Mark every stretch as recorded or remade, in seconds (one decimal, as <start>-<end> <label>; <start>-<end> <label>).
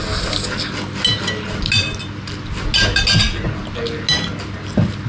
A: 0.0-5.1 recorded